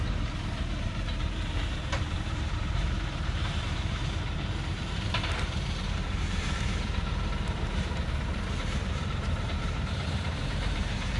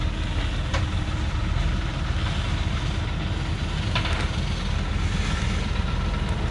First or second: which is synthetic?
first